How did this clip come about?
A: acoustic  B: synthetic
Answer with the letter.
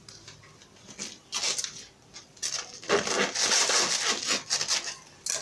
A